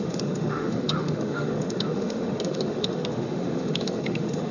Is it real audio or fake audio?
fake